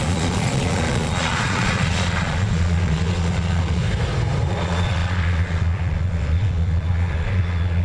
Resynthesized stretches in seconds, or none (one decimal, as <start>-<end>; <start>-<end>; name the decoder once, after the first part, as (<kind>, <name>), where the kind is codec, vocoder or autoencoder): 0.0-3.8 (vocoder, Vocos); 4.5-7.8